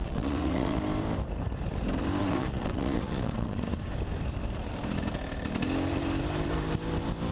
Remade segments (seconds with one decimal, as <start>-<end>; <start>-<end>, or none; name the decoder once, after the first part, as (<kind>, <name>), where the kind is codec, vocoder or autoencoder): 0.0-0.8 (vocoder, WaveNeXt); 2.2-3.6